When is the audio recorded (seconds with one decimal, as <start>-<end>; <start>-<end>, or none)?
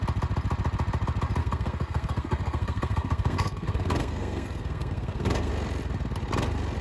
0.0-1.4; 5.5-6.8